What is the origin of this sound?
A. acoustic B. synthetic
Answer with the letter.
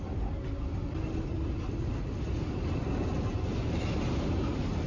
A